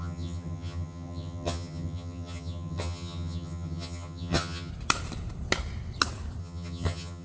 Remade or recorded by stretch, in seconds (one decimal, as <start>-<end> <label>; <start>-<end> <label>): 0.0-4.7 remade; 4.7-6.4 recorded; 6.4-7.2 remade